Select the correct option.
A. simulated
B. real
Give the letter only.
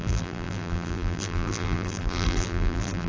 A